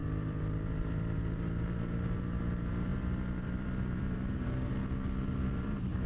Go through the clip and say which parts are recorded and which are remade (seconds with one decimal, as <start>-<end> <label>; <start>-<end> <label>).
0.0-4.8 remade; 4.8-5.3 recorded; 5.3-6.1 remade